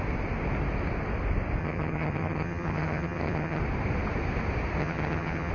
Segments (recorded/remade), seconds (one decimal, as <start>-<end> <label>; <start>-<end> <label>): 0.0-1.6 recorded; 1.6-3.6 remade; 3.6-4.8 recorded; 4.8-5.5 remade